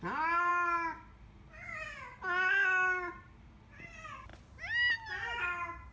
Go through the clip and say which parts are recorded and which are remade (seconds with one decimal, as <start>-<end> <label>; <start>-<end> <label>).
0.0-5.9 recorded